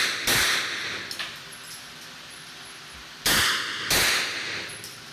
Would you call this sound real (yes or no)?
yes